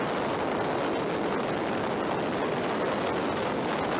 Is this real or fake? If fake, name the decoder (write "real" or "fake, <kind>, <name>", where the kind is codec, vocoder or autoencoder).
real